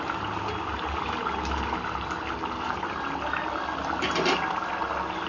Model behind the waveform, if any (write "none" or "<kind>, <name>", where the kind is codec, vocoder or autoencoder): none